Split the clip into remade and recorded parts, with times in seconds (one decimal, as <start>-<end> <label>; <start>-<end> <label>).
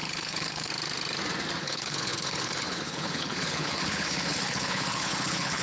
0.0-0.7 remade; 0.7-1.6 recorded; 1.6-5.6 remade